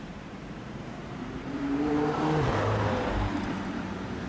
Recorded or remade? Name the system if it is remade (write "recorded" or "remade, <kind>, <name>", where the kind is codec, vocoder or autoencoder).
remade, vocoder, BigVGAN v2